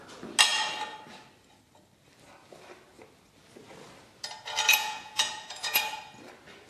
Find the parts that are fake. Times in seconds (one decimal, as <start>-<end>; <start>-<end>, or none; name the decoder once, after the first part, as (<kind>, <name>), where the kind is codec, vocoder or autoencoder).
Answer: 4.7-5.8 (vocoder, Vocos)